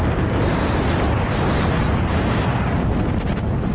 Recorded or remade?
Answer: recorded